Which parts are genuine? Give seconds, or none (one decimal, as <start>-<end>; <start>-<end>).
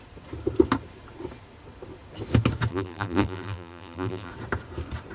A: 0.0-2.7; 4.3-5.1